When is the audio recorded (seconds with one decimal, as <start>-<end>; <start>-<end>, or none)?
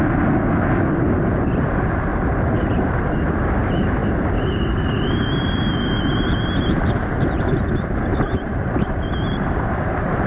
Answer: 0.0-2.1; 3.1-4.0; 6.7-8.1